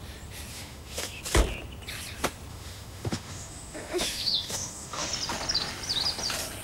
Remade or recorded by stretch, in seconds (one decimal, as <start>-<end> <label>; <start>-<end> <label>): 0.0-0.5 recorded; 0.5-1.2 remade; 1.2-2.5 recorded; 2.5-5.1 remade; 5.1-6.6 recorded